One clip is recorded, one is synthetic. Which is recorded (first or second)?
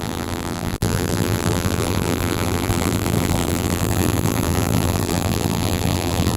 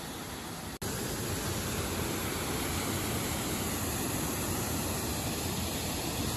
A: second